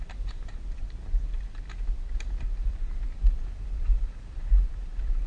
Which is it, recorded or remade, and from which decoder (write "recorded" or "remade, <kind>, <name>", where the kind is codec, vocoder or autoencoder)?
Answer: remade, vocoder, BigVGAN v2